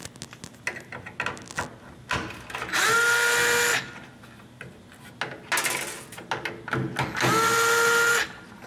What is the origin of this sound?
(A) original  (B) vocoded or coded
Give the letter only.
A